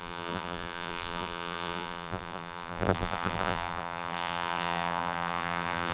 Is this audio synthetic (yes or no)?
yes